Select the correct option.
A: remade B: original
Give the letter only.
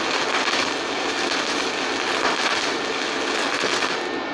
B